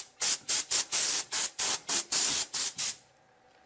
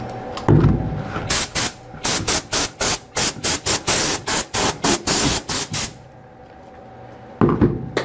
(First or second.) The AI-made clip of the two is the first